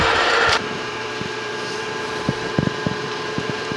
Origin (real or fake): fake